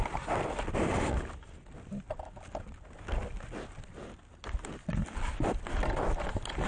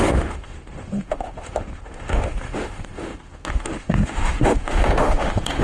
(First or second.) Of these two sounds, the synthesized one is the second